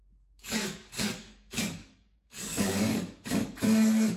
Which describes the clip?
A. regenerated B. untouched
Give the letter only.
A